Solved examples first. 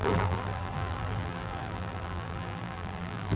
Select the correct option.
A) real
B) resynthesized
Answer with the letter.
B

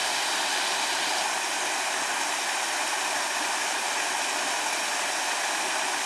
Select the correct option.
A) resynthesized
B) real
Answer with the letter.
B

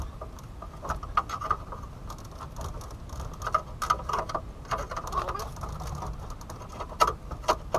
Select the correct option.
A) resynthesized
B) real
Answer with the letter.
B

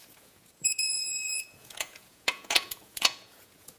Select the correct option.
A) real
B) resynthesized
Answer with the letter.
B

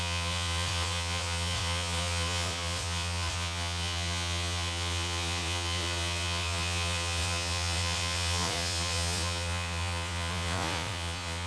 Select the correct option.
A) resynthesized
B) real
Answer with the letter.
A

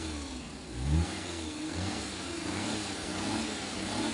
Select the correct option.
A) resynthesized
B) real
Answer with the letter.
A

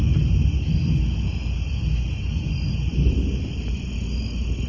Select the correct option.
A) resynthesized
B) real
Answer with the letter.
B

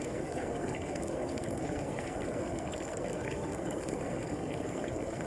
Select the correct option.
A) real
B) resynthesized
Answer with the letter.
B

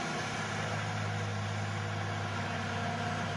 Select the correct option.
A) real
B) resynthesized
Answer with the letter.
A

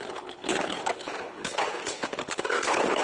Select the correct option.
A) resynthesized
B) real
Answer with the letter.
A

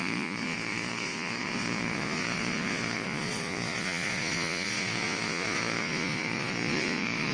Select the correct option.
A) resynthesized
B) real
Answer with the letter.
A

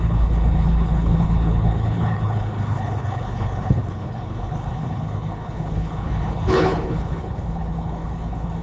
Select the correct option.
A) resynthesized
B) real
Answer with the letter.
A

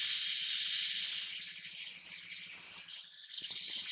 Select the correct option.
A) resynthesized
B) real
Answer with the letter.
B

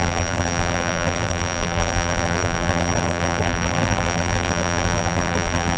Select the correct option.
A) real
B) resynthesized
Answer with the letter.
B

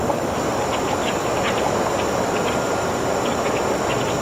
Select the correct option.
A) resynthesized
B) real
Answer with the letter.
A